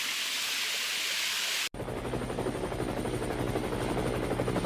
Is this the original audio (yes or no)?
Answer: yes